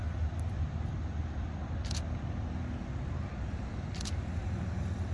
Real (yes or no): yes